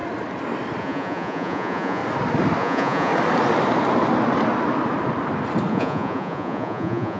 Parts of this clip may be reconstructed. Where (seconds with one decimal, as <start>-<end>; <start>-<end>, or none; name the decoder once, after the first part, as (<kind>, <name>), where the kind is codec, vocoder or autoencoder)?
0.8-2.0 (vocoder, Vocos); 2.6-3.1; 5.7-7.2